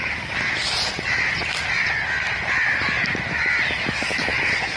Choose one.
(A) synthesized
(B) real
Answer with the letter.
B